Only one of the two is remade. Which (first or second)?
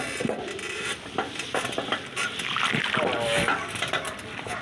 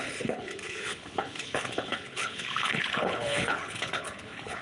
second